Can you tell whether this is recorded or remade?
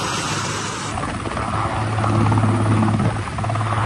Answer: recorded